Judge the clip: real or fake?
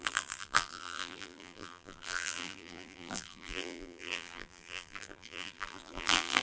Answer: fake